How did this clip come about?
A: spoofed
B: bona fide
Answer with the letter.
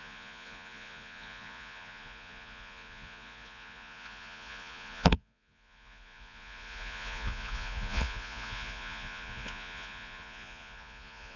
A